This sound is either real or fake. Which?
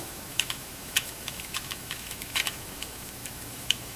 fake